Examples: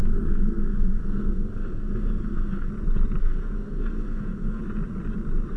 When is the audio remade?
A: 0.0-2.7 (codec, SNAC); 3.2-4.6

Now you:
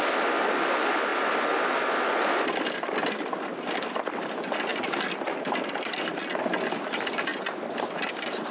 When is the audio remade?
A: 1.1-1.7 (vocoder, BigVGAN v2); 4.7-6.2

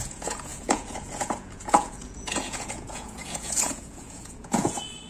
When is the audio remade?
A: 0.0-5.1 (vocoder, Vocos)

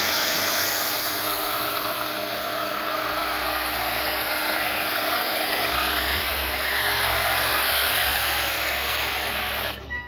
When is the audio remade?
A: 0.0-10.1 (codec, SNAC)

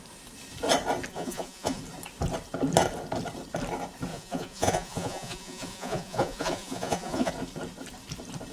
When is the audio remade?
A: 1.1-1.8 (vocoder, Vocos); 4.1-7.3

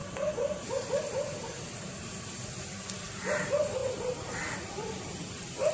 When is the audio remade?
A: 0.0-3.8 (vocoder, BigVGAN v2); 4.7-5.7

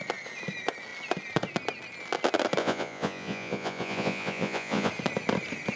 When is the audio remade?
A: 2.6-4.9 (vocoder, Vocos)

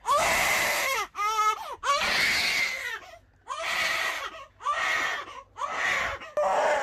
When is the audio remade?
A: none